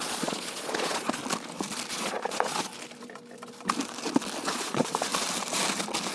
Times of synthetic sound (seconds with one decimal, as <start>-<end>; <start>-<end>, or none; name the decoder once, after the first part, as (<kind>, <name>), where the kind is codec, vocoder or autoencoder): 0.0-1.2 (vocoder, Vocos); 1.9-2.7; 4.4-5.1